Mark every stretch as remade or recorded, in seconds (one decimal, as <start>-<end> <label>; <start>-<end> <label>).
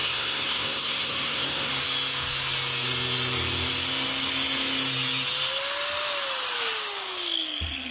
0.0-1.7 remade; 1.7-7.9 recorded